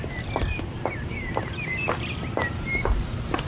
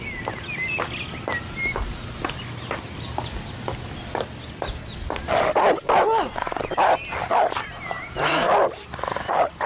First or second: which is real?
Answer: second